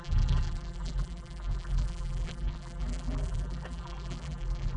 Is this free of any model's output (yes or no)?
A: no